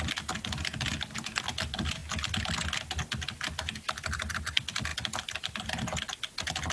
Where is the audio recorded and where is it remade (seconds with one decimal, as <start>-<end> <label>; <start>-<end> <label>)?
0.0-6.7 recorded